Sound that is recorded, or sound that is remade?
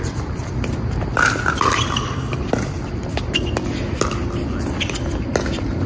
recorded